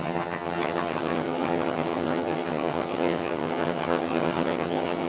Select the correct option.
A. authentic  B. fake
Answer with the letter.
B